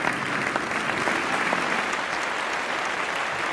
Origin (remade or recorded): recorded